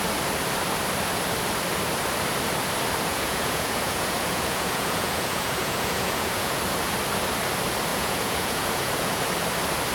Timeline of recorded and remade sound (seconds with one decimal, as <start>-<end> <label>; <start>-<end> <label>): 0.0-3.1 recorded; 3.1-6.6 remade; 6.6-7.9 recorded; 7.9-9.2 remade; 9.2-9.9 recorded